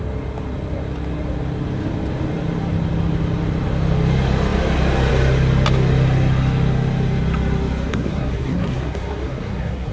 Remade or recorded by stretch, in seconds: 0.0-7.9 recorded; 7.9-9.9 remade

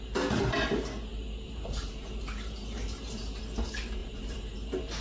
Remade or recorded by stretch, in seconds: 0.0-1.1 recorded; 1.1-3.4 remade; 3.4-4.0 recorded; 4.0-5.0 remade

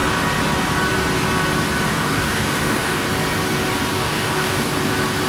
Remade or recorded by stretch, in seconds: 0.0-1.9 recorded; 1.9-3.1 remade; 3.1-3.9 recorded; 3.9-4.7 remade; 4.7-5.3 recorded

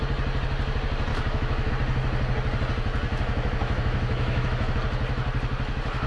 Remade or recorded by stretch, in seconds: 0.0-1.1 recorded; 1.1-1.7 remade; 1.7-3.1 recorded; 3.1-4.7 remade; 4.7-6.1 recorded

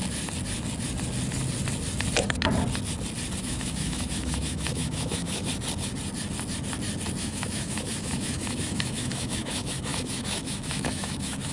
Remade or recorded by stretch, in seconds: 0.0-3.4 recorded; 3.4-5.5 remade; 5.5-7.2 recorded; 7.2-11.5 remade

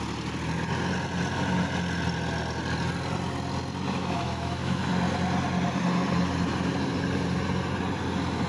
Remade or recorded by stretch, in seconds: 0.0-4.0 recorded; 4.0-4.8 remade; 4.8-8.5 recorded